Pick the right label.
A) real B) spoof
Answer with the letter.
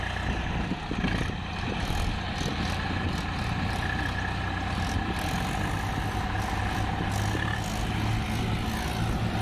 A